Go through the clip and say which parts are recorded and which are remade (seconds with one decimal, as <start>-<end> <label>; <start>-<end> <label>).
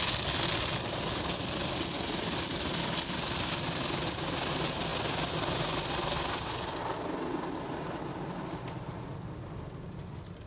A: 0.0-10.5 recorded